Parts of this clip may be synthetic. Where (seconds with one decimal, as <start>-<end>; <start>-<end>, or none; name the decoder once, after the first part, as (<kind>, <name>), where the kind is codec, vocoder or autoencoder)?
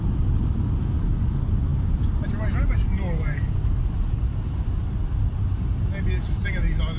none